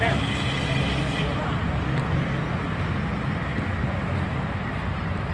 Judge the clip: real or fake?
real